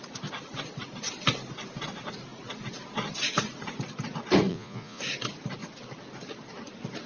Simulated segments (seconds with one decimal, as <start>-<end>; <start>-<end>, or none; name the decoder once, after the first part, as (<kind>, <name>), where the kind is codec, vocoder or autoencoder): 4.5-5.0 (vocoder, Vocos)